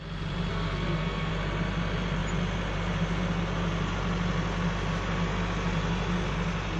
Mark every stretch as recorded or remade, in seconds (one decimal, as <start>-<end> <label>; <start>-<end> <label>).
0.0-0.5 recorded; 0.5-1.3 remade; 1.3-6.8 recorded